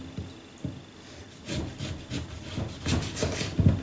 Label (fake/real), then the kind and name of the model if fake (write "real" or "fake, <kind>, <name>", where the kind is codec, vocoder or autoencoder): real